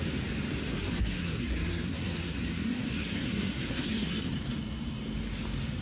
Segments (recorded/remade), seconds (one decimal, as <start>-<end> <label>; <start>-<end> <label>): 0.0-0.7 recorded; 0.7-4.2 remade; 4.2-5.8 recorded